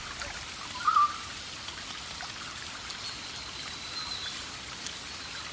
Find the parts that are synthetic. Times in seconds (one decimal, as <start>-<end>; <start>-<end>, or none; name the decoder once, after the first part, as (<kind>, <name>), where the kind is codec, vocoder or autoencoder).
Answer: none